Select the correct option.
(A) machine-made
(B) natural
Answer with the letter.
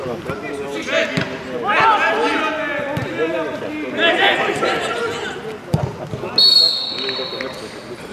B